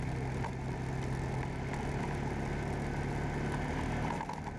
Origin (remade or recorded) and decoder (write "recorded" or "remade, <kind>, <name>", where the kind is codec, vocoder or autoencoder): recorded